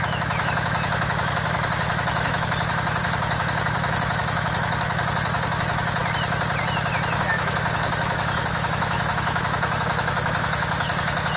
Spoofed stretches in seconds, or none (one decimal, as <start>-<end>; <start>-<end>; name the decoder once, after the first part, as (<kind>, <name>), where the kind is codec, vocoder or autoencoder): 0.0-6.0 (autoencoder, DAC-VAE); 7.2-11.4